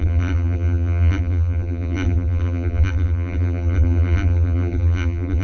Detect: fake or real fake